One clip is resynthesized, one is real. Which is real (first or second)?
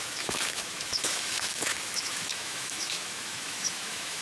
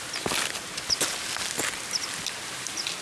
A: second